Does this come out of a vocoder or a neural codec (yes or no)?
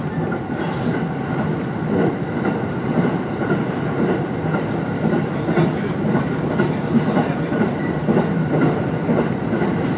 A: yes